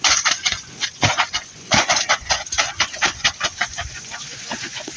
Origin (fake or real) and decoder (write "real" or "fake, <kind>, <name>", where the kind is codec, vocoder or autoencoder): fake, vocoder, Vocos